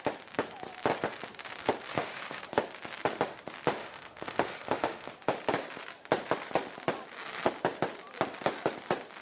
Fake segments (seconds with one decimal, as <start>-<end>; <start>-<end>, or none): 1.9-2.4; 3.8-5.1